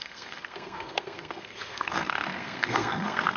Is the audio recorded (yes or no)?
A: no